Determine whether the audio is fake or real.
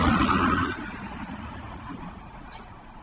fake